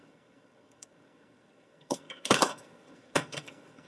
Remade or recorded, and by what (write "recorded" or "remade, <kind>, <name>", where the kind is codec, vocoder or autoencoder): remade, codec, SNAC